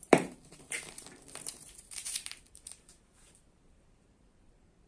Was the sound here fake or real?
fake